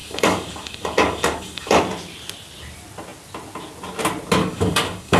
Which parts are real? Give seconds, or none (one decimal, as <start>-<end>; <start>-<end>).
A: 1.8-4.4